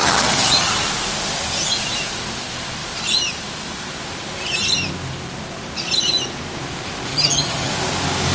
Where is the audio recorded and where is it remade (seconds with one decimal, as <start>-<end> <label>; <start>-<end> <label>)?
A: 0.0-0.7 remade; 0.7-7.1 recorded; 7.1-7.7 remade; 7.7-8.3 recorded